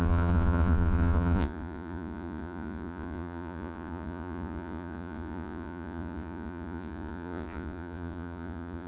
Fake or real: fake